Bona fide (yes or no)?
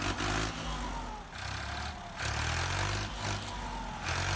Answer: yes